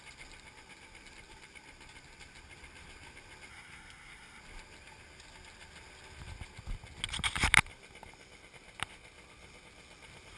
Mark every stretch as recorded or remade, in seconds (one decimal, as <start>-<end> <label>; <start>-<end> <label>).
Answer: 0.0-3.5 recorded; 3.5-4.4 remade; 4.4-10.4 recorded